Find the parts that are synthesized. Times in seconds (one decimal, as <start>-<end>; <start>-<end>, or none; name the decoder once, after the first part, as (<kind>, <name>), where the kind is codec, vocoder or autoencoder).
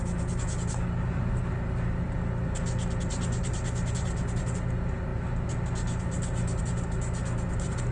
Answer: none